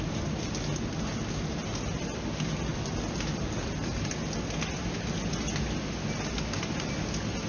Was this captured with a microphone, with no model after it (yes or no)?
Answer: yes